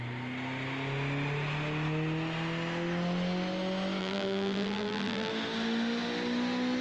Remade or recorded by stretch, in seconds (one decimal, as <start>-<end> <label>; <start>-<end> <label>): 0.0-4.0 recorded; 4.0-5.3 remade; 5.3-6.8 recorded